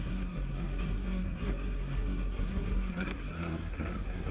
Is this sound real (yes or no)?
no